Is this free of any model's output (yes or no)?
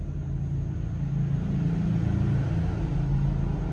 yes